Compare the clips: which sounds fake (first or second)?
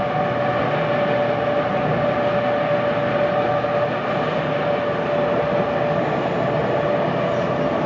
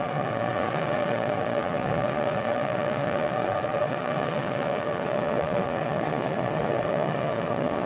second